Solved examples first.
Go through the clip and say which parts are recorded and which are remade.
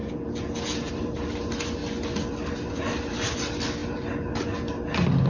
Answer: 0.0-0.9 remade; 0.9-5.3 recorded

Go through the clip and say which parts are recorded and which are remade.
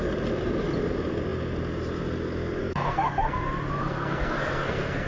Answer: 0.0-2.6 recorded; 2.6-3.4 remade; 3.4-3.8 recorded; 3.8-5.1 remade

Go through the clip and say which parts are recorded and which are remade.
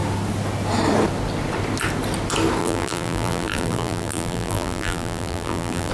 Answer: 0.0-2.6 recorded; 2.6-5.9 remade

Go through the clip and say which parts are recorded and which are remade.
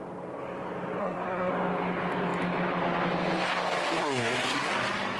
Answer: 0.0-1.0 recorded; 1.0-1.5 remade; 1.5-4.0 recorded; 4.0-4.7 remade; 4.7-5.2 recorded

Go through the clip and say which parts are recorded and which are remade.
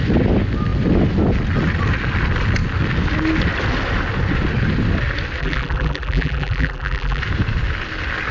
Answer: 0.0-5.4 recorded; 5.4-7.2 remade; 7.2-8.3 recorded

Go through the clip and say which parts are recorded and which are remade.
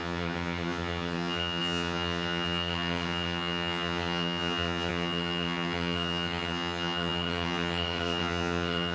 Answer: 0.0-8.9 remade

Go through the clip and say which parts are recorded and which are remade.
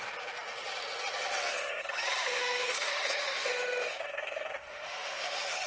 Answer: 0.0-2.2 recorded; 2.2-5.7 remade